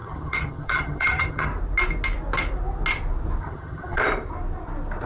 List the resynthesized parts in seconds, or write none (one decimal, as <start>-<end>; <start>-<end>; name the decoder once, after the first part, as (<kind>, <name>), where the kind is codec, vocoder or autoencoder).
0.0-1.5 (vocoder, HiFi-GAN); 3.4-4.0